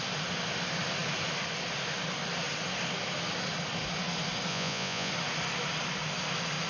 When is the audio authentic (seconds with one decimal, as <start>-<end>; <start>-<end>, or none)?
0.0-4.5; 5.1-6.7